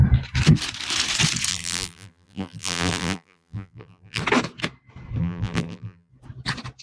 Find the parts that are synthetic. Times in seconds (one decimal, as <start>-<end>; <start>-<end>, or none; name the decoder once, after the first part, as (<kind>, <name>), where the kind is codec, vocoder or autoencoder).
1.5-4.2 (vocoder, BigVGAN v2); 5.2-6.1